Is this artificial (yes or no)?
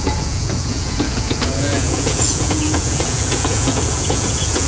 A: yes